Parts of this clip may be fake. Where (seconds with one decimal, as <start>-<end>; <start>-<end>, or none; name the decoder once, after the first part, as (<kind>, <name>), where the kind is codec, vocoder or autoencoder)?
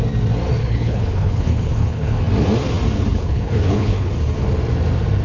0.6-2.2 (codec, HILCodec); 3.1-4.1